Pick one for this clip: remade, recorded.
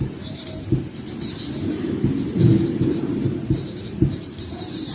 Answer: remade